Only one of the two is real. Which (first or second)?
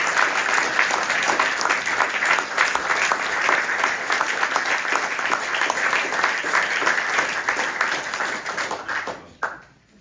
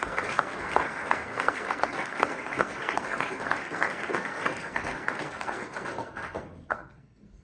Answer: first